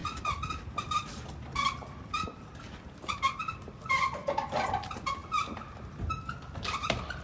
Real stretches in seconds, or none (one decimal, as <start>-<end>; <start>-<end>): 0.0-7.2